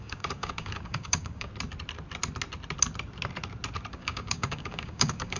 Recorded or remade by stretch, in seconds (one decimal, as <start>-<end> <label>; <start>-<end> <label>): 0.0-1.5 remade; 1.5-3.9 recorded; 3.9-5.4 remade